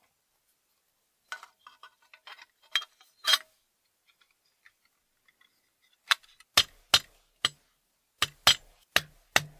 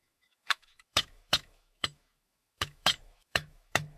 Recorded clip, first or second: first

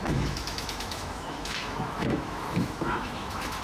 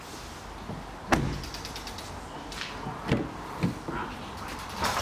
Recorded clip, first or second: second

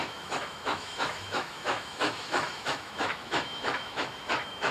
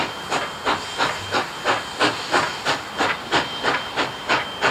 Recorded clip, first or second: second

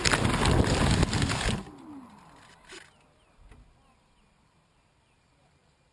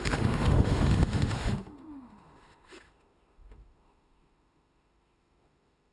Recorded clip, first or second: first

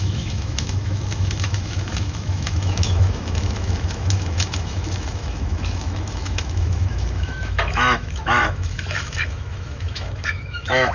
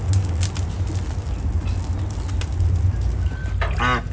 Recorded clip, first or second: second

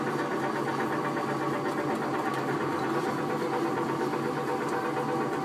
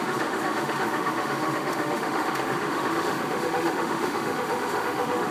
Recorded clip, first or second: first